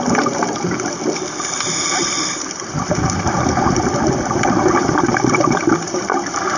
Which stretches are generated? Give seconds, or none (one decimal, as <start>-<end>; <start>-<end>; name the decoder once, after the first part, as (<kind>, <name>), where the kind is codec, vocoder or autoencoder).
2.0-2.9 (vocoder, BigVGAN v2); 4.8-6.6